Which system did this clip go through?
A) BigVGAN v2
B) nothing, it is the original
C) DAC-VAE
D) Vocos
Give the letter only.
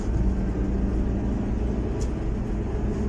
B